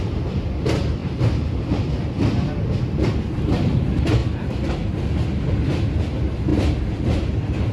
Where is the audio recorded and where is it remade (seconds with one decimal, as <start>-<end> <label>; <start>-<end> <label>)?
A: 0.0-4.2 remade; 4.2-4.9 recorded; 4.9-6.5 remade; 6.5-7.1 recorded; 7.1-7.7 remade